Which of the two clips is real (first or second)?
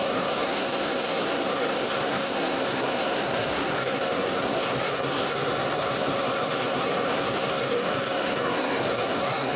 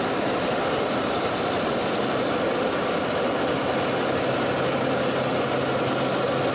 second